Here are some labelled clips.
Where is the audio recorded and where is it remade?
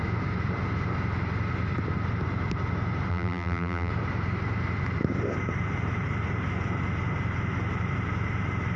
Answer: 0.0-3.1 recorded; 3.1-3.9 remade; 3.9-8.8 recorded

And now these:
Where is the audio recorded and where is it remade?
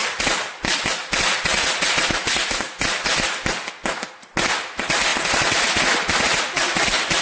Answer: 0.0-7.2 recorded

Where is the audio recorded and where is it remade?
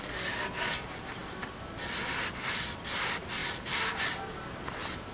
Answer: 0.0-3.4 recorded; 3.4-4.0 remade; 4.0-5.1 recorded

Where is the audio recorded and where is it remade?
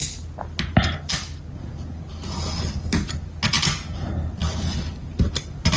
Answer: 0.0-5.8 recorded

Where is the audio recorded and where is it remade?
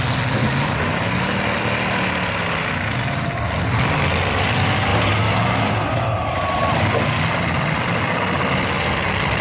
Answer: 0.0-4.9 recorded; 4.9-6.6 remade; 6.6-9.4 recorded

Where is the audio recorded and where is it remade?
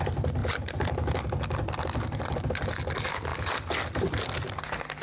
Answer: 0.0-0.4 recorded; 0.4-2.4 remade; 2.4-5.0 recorded